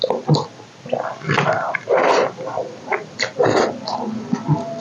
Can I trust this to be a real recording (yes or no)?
yes